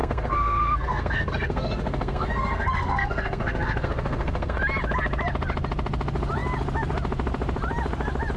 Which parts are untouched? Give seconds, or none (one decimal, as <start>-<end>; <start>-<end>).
4.6-8.4